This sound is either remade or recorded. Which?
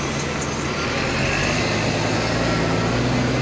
recorded